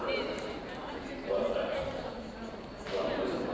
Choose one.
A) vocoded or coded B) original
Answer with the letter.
A